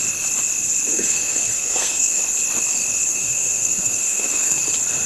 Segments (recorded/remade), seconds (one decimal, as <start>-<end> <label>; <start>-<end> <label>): 0.0-0.9 recorded; 0.9-2.2 remade; 2.2-3.1 recorded; 3.1-4.6 remade; 4.6-5.1 recorded